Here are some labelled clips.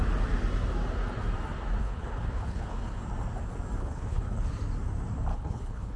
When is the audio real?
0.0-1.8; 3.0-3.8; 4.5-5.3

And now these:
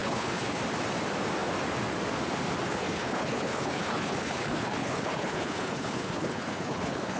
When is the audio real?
0.6-2.7

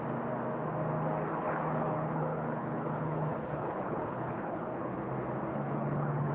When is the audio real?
0.0-1.3; 5.1-5.5

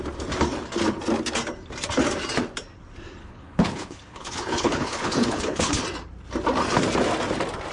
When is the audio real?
0.0-3.2; 5.8-7.7

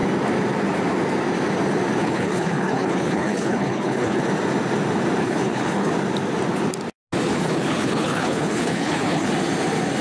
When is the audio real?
0.0-2.0; 4.2-5.2; 5.9-7.3; 9.3-10.0

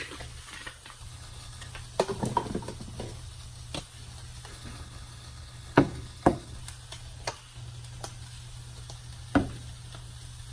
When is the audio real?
0.0-1.1; 1.7-4.5; 6.6-10.5

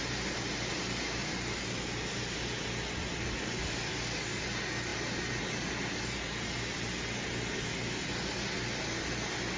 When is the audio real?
0.0-9.6

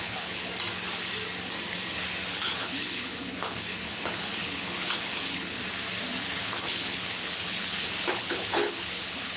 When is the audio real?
0.5-2.3; 5.6-6.4